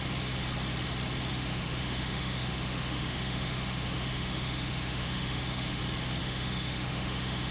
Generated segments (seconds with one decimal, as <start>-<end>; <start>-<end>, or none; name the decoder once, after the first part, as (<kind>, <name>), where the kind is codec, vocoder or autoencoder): 1.3-5.8 (autoencoder, DAC-VAE); 6.2-7.5